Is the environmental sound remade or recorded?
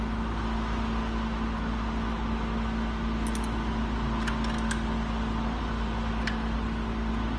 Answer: recorded